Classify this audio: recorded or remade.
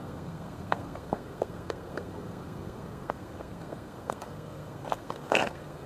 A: remade